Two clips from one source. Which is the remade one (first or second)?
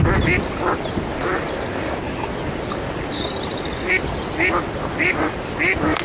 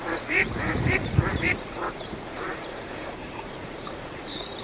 second